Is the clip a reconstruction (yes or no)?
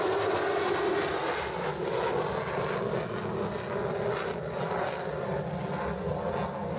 no